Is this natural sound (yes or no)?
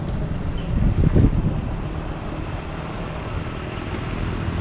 no